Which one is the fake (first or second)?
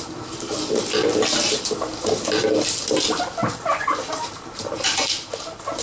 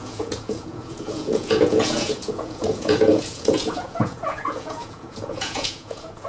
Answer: second